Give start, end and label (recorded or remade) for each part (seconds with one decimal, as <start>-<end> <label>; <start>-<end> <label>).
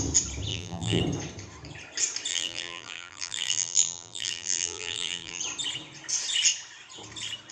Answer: 0.0-0.5 recorded; 0.5-1.0 remade; 1.0-2.3 recorded; 2.3-5.4 remade; 5.4-7.5 recorded